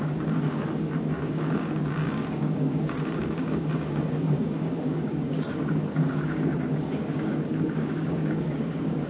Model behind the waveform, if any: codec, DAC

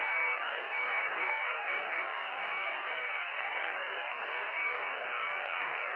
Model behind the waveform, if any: codec, DAC